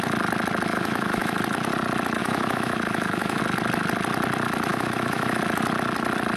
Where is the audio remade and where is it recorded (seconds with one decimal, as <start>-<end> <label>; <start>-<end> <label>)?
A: 0.0-0.7 recorded; 0.7-1.4 remade; 1.4-2.2 recorded; 2.2-3.4 remade; 3.4-4.7 recorded; 4.7-5.4 remade; 5.4-6.4 recorded